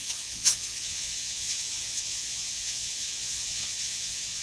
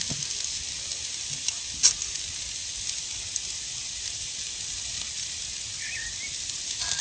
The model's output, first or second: first